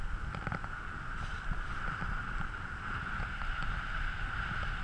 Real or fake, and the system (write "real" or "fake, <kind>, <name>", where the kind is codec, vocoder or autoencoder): real